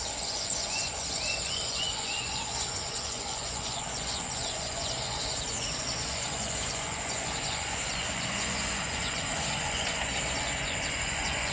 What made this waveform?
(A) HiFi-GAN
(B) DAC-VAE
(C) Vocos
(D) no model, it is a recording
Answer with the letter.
C